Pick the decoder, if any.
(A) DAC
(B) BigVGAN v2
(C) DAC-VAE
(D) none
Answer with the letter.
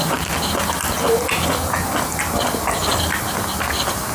D